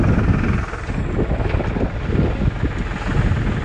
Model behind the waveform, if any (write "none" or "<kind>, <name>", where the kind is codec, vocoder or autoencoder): none